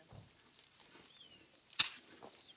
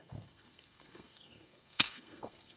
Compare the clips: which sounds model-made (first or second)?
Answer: second